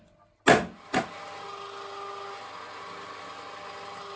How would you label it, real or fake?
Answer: real